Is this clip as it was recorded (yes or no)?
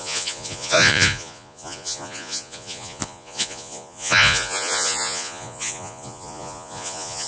no